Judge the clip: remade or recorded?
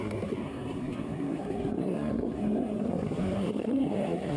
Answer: remade